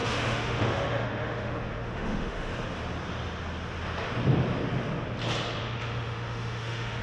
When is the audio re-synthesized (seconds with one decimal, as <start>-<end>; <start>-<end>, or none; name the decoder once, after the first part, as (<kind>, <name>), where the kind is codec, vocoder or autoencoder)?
0.0-2.5 (autoencoder, DAC-VAE); 5.6-7.0